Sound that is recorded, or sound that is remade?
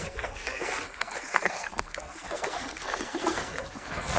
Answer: remade